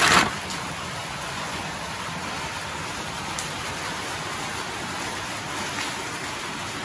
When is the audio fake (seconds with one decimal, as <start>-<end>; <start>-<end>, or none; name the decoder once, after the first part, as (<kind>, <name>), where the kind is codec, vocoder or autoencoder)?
1.0-1.6 (vocoder, Vocos)